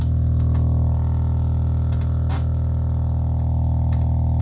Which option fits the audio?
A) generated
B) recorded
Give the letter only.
B